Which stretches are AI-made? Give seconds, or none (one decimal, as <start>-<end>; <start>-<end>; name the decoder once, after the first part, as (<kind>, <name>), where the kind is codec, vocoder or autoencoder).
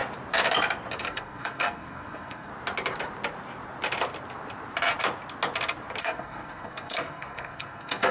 1.0-2.5 (codec, SNAC); 6.0-8.1